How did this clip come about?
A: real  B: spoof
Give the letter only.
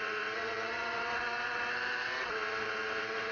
B